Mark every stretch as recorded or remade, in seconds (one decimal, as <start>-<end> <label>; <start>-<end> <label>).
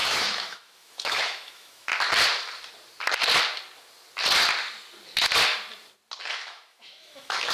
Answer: 0.0-1.9 remade; 1.9-6.3 recorded; 6.3-7.5 remade